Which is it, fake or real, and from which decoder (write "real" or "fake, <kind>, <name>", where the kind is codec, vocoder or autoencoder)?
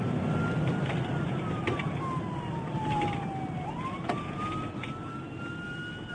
real